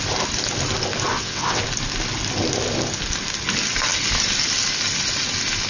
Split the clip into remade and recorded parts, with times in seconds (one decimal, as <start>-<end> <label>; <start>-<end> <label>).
0.0-1.1 recorded; 1.1-1.6 remade; 1.6-5.7 recorded